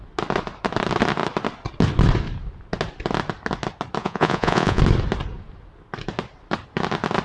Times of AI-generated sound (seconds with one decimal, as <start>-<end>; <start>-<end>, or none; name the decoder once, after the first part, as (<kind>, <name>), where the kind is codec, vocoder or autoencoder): 4.0-4.8 (vocoder, Vocos)